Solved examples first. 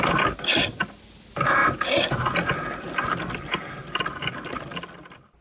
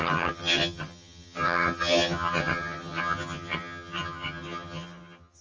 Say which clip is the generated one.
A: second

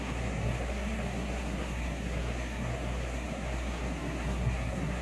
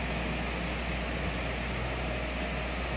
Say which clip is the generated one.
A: first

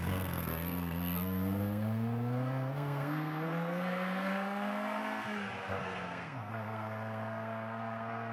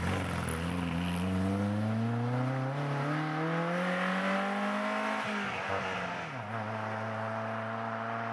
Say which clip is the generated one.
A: first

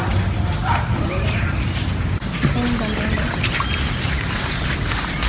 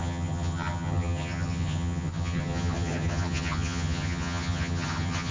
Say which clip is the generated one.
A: second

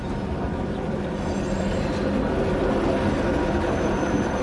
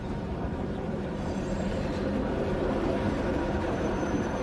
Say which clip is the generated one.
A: second